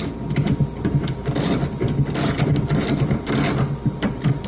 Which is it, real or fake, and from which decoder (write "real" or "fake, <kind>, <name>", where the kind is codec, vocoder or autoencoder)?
real